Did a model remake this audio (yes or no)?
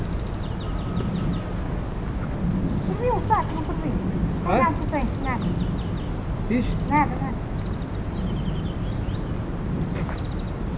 no